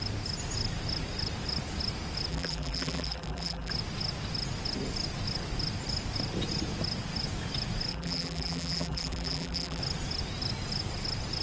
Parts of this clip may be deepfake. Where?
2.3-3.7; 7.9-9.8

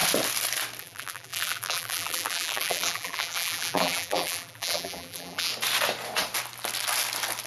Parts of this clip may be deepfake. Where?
0.8-5.5